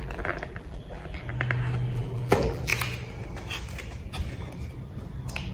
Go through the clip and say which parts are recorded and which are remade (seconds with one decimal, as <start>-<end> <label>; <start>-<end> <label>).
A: 0.0-1.3 remade; 1.3-1.9 recorded; 1.9-2.7 remade; 2.7-5.5 recorded